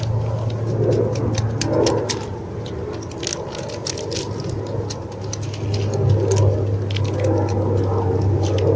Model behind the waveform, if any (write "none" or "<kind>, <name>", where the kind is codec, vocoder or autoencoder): none